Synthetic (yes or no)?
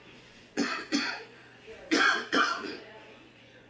yes